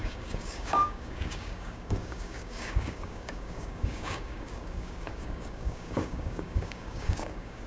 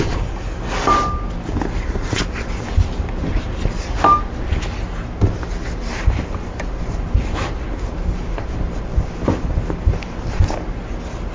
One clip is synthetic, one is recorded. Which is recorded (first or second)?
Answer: second